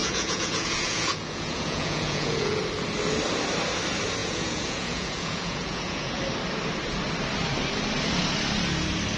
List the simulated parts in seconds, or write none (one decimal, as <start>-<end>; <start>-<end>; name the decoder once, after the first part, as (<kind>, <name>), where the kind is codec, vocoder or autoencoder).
0.0-2.6 (vocoder, Vocos); 4.2-6.2